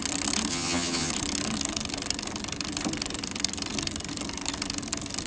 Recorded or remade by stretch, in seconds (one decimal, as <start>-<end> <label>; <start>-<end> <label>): 0.0-0.5 recorded; 0.5-1.1 remade; 1.1-5.3 recorded